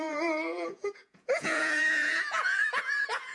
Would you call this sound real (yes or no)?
no